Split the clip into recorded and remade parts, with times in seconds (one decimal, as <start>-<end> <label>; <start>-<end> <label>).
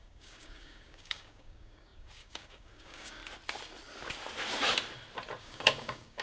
0.0-3.2 remade; 3.2-5.4 recorded; 5.4-6.2 remade